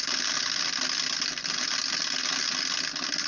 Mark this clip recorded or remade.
recorded